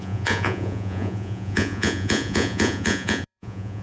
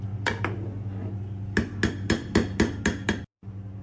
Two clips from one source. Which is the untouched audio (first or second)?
second